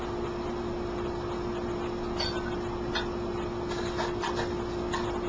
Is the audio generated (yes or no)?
no